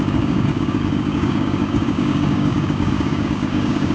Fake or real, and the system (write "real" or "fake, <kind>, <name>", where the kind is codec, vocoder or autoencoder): fake, codec, DAC